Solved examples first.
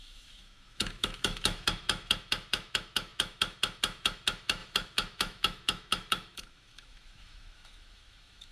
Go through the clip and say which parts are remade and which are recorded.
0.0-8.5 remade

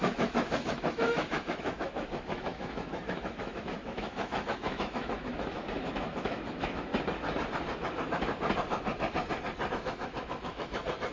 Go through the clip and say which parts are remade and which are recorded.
0.0-6.9 remade; 6.9-9.7 recorded; 9.7-11.1 remade

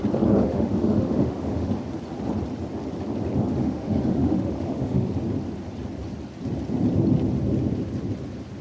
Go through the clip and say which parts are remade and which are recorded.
0.0-0.4 recorded; 0.4-1.7 remade; 1.7-3.6 recorded; 3.6-5.1 remade; 5.1-8.6 recorded